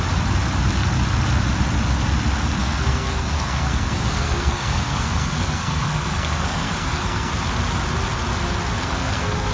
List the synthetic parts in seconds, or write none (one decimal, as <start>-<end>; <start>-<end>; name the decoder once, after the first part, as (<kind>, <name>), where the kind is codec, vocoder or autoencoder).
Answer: 2.6-7.3 (codec, SNAC); 8.8-9.5